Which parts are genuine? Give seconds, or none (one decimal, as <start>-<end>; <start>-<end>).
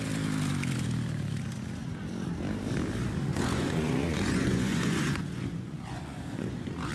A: 0.0-3.3